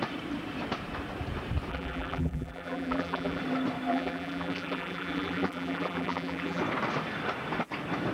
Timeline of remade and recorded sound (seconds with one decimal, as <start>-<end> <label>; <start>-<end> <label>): 0.0-1.7 recorded; 1.7-3.4 remade; 3.4-3.9 recorded; 3.9-6.6 remade; 6.6-8.1 recorded